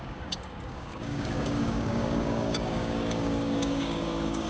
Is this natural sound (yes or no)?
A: no